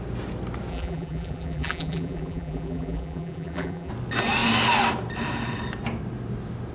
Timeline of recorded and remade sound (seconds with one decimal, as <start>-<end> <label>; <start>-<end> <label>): 0.0-0.7 recorded; 0.7-3.9 remade; 3.9-6.7 recorded